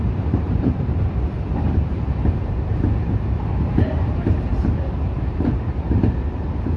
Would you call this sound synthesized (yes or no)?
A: yes